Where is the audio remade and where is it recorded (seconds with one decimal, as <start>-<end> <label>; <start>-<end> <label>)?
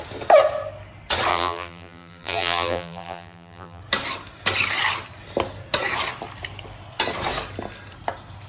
0.0-1.3 recorded; 1.3-3.8 remade; 3.8-8.5 recorded